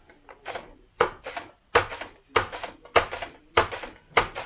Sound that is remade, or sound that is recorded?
recorded